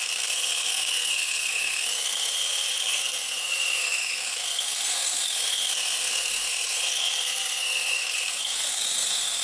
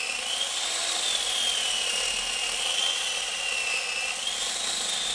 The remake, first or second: first